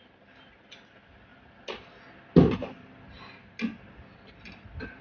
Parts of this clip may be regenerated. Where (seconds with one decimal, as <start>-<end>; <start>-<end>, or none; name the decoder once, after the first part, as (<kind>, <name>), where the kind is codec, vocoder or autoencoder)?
none